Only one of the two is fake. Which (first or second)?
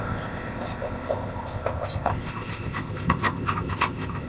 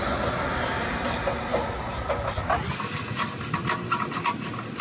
first